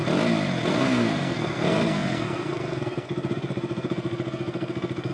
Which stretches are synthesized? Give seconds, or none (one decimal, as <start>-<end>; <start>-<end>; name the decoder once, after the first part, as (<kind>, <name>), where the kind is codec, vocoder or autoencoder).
0.7-5.1 (codec, SNAC)